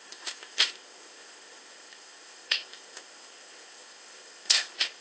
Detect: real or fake fake